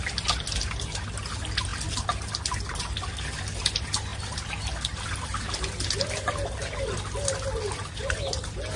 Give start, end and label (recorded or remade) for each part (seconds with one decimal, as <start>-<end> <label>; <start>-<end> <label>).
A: 0.0-8.8 recorded